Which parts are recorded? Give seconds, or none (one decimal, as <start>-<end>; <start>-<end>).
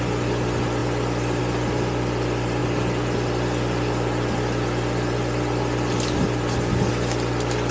0.0-7.7